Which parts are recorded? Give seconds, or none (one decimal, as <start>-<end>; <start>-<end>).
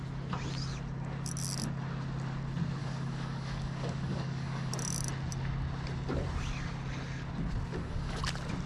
0.0-2.8; 4.7-7.7; 8.2-8.7